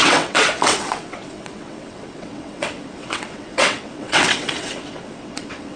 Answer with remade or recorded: remade